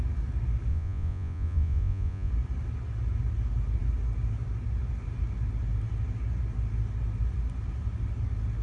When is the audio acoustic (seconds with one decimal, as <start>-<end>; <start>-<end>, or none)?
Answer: 0.0-0.7; 2.3-8.6